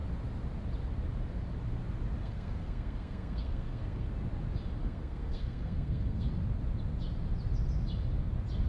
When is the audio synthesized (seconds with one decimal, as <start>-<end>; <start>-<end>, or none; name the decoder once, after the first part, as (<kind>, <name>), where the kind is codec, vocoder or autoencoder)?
2.2-4.1 (codec, SNAC); 4.8-6.3